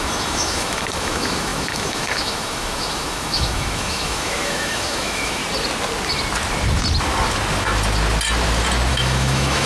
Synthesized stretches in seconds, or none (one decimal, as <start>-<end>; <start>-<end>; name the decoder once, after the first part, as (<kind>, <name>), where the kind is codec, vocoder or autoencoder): 0.0-5.4 (autoencoder, DAC-VAE); 8.9-9.7

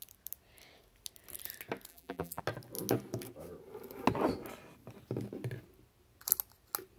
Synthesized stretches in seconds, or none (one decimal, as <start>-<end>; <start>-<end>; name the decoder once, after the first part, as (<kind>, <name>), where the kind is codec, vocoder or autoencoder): 1.9-2.4 (vocoder, BigVGAN v2)